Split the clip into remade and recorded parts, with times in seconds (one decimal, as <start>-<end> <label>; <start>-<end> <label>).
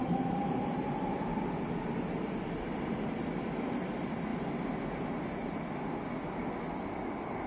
0.0-4.3 remade; 4.3-6.7 recorded; 6.7-7.5 remade